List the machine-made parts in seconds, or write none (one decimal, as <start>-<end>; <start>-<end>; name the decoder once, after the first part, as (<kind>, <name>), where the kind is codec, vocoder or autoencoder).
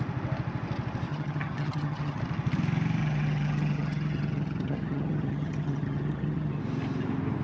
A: 1.1-2.2 (vocoder, HiFi-GAN); 3.0-6.6